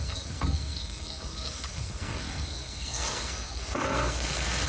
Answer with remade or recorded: remade